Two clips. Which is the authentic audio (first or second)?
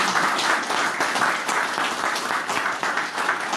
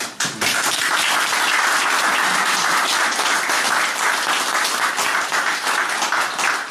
first